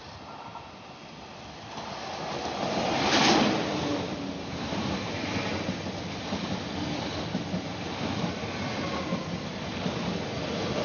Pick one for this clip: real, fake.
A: real